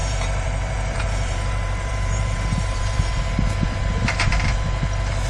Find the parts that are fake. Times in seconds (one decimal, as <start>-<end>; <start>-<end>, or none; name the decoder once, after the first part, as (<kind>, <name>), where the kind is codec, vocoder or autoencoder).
0.0-3.1 (vocoder, BigVGAN v2)